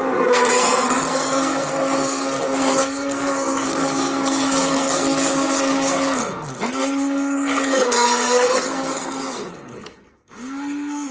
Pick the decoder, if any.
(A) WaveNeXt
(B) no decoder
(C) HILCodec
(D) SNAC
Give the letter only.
D